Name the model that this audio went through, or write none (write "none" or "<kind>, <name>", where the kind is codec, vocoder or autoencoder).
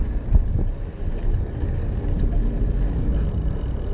none